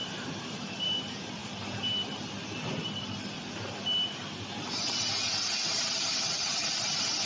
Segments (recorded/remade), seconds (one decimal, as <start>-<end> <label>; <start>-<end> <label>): 0.0-1.4 remade; 1.4-5.8 recorded; 5.8-7.3 remade